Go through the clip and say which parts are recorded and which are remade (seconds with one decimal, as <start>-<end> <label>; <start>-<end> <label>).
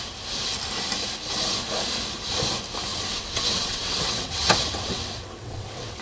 0.0-2.9 recorded; 2.9-6.0 remade